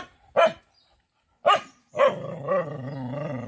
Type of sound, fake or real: real